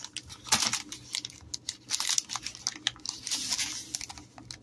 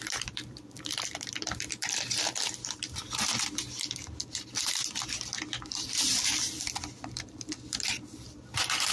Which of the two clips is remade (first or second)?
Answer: second